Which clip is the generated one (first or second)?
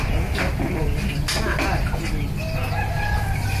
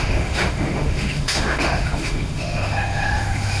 second